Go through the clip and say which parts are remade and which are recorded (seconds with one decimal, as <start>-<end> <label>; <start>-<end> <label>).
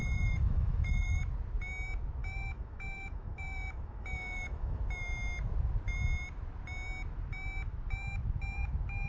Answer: 0.0-1.2 remade; 1.2-2.2 recorded; 2.2-4.8 remade; 4.8-9.1 recorded